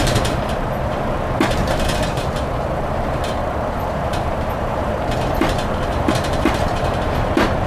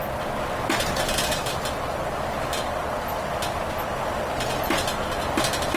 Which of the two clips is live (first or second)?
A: second